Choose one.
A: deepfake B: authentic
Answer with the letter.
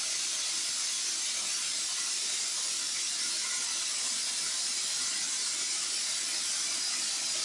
B